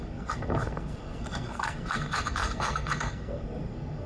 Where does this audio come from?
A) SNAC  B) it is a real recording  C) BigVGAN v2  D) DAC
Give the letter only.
A